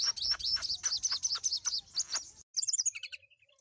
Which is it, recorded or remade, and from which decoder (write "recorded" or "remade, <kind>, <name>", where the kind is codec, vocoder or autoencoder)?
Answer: recorded